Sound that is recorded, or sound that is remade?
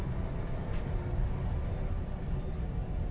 recorded